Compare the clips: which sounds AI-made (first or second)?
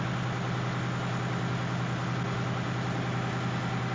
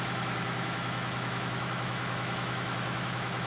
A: second